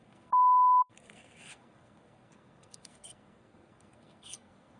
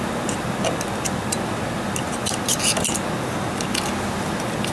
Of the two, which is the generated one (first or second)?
first